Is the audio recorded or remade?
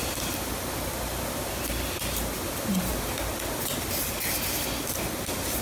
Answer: recorded